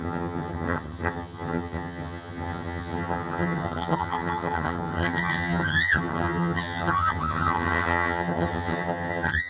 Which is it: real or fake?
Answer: fake